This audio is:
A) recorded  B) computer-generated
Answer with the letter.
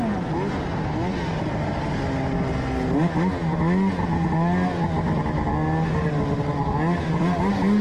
A